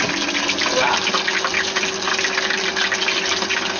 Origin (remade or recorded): recorded